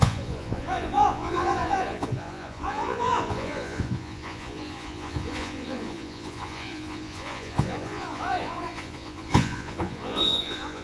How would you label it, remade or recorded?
remade